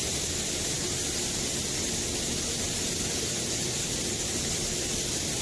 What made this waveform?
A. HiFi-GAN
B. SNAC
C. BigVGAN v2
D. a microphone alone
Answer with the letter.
D